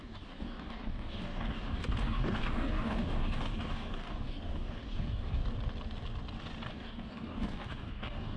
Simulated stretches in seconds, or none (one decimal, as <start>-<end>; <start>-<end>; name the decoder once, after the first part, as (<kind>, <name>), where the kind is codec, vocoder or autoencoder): 0.0-5.4 (codec, DAC); 6.7-8.4